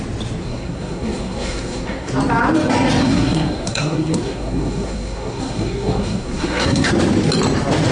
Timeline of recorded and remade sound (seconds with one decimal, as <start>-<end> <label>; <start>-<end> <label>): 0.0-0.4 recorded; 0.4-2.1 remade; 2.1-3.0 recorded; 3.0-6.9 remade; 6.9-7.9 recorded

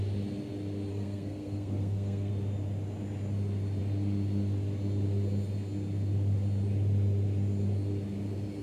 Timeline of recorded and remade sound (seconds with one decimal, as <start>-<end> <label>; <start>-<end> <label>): 0.0-0.9 recorded; 0.9-2.3 remade; 2.3-8.6 recorded

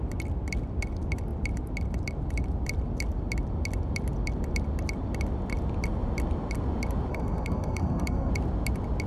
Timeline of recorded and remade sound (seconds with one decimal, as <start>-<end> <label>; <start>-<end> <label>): 0.0-7.1 recorded; 7.1-8.3 remade; 8.3-9.1 recorded

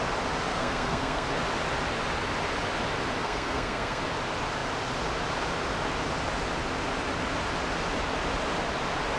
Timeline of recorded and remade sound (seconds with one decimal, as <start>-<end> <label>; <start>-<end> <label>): 0.0-0.5 recorded; 0.5-1.4 remade; 1.4-3.2 recorded; 3.2-4.0 remade; 4.0-9.2 recorded

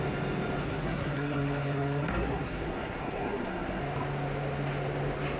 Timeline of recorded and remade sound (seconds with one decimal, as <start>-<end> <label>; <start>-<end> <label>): 0.0-0.6 recorded; 0.6-3.8 remade; 3.8-5.4 recorded